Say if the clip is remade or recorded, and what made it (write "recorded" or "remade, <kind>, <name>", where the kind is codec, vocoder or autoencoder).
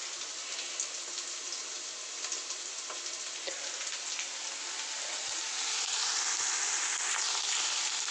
recorded